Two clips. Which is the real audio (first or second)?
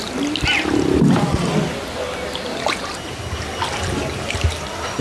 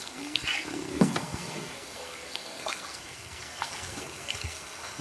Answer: first